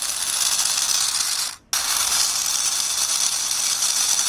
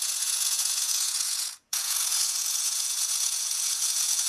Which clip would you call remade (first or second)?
second